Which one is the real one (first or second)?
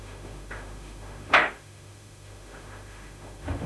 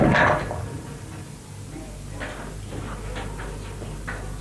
second